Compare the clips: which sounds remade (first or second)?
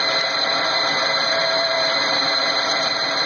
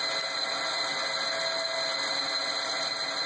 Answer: first